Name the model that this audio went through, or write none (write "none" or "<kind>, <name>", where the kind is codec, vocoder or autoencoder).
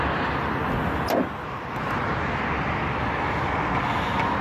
none